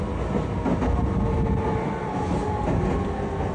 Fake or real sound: real